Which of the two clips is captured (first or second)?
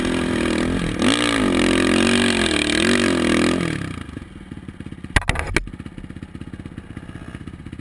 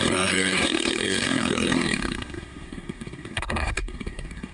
first